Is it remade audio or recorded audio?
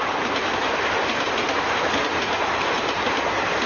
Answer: recorded